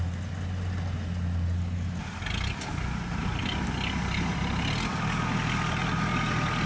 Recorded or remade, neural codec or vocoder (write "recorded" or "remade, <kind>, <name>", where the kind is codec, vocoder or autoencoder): recorded